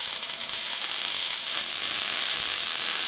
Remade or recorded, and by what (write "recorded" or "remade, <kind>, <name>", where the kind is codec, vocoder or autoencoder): remade, autoencoder, DAC-VAE